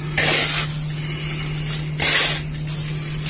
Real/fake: real